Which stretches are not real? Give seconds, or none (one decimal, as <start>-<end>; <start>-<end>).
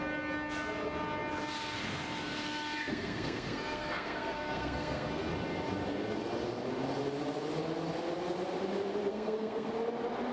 2.9-5.3; 9.1-9.7